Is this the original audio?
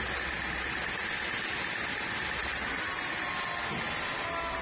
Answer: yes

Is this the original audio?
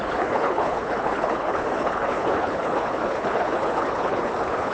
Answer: no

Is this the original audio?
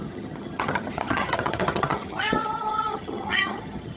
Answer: no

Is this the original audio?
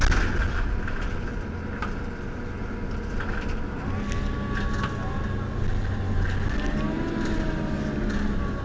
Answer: yes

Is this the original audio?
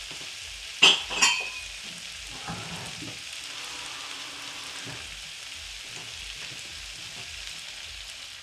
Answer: yes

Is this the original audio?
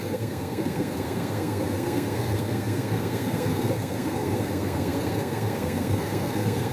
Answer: no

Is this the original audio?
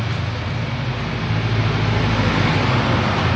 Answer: yes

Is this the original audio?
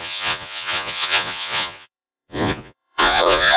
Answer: no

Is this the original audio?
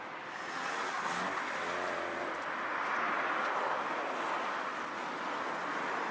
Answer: yes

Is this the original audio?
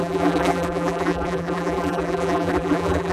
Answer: no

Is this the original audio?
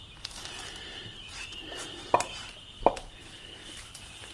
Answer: no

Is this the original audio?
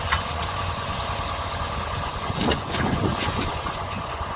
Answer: no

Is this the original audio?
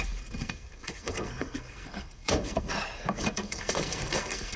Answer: no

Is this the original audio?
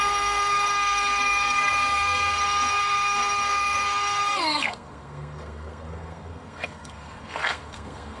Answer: no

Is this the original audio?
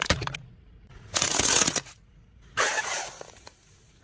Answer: no